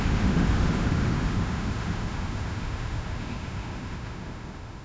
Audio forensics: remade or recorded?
remade